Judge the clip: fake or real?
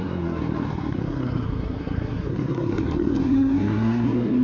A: fake